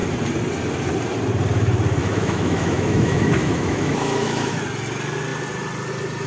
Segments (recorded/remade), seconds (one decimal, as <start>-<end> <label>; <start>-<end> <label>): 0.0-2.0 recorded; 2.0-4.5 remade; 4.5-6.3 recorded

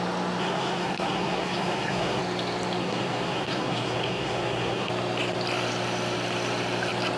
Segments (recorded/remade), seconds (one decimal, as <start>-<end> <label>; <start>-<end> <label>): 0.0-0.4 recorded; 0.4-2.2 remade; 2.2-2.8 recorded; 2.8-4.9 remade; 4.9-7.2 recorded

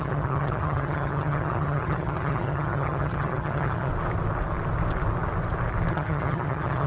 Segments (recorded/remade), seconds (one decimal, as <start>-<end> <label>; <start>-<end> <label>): 0.0-3.9 remade; 3.9-5.9 recorded; 5.9-6.9 remade

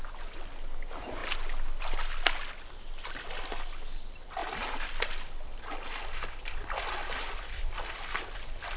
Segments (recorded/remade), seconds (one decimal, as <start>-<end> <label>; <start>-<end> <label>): 0.0-8.8 recorded